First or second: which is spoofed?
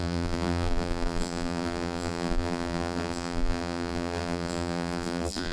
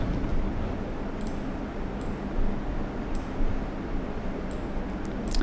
first